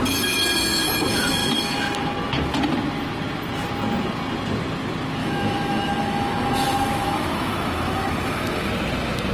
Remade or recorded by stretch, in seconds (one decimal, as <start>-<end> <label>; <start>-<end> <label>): 0.0-5.2 recorded; 5.2-8.7 remade; 8.7-9.3 recorded